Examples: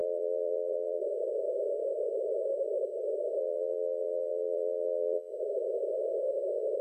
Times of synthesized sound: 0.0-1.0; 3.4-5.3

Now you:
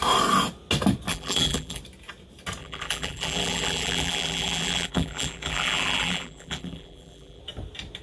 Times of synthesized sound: 1.1-1.8; 2.6-7.4

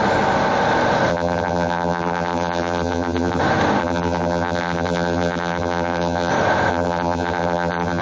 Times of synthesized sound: 1.1-3.4; 3.8-6.3; 6.7-8.0

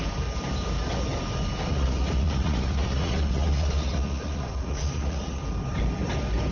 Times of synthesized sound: 1.7-5.4

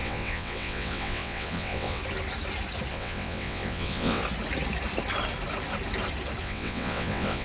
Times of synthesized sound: 0.0-2.0; 2.9-4.2; 6.4-7.4

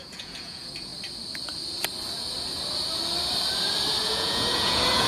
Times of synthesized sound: 0.0-0.9; 4.0-5.1